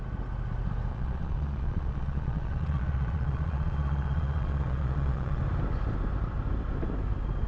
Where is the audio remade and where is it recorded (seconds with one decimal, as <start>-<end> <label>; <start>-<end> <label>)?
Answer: 0.0-0.9 recorded; 0.9-5.4 remade; 5.4-7.5 recorded